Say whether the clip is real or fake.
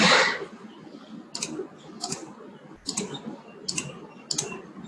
real